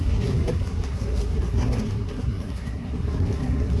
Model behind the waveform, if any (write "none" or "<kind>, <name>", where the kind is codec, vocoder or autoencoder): codec, SNAC